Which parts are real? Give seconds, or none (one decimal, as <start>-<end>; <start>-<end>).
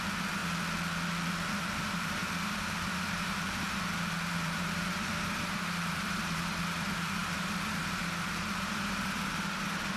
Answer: 0.4-1.6